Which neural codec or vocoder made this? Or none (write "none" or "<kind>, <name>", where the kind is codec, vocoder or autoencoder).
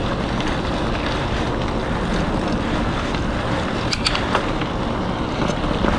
none